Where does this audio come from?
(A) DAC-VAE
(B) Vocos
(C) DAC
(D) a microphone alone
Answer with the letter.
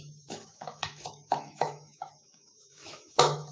A